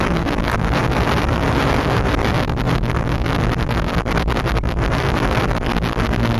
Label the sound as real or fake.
fake